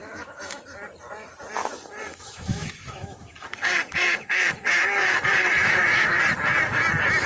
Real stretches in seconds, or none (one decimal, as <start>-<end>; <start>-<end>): 0.6-2.1; 6.2-7.3